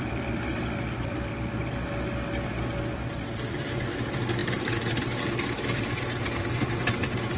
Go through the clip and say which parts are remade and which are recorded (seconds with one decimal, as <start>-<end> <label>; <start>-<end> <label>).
0.0-0.5 remade; 0.5-1.0 recorded; 1.0-1.6 remade; 1.6-2.8 recorded; 2.8-7.4 remade